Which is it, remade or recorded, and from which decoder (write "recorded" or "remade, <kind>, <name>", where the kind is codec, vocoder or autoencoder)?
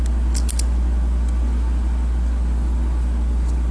recorded